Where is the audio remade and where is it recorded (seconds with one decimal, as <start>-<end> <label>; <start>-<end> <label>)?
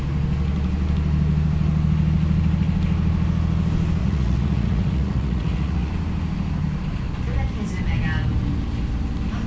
0.0-4.0 recorded; 4.0-5.9 remade; 5.9-9.5 recorded